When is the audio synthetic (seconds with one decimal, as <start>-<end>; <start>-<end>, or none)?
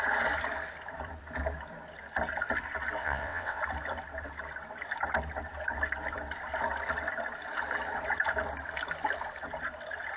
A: 3.0-3.6